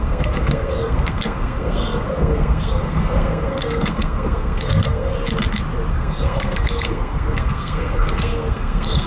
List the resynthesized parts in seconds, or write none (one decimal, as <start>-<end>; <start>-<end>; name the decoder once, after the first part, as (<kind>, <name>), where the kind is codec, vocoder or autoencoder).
0.0-5.1 (codec, SNAC); 5.9-9.1